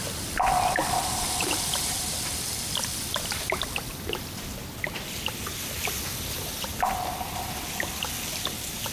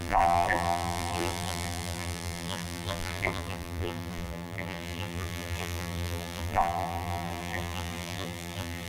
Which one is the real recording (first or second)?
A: first